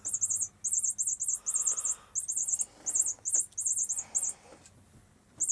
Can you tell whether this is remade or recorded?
recorded